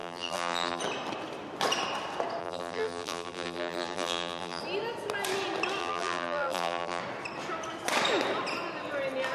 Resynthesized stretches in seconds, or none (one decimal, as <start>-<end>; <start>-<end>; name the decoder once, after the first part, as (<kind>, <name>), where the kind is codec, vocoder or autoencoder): 0.0-0.8 (vocoder, BigVGAN v2); 2.4-4.6; 5.8-7.0